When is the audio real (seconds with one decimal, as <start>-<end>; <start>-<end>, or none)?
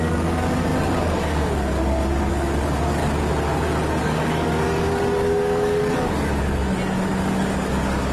3.0-4.0; 6.6-7.2